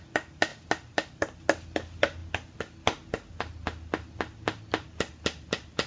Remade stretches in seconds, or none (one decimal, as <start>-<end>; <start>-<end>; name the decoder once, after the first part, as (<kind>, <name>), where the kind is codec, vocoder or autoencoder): none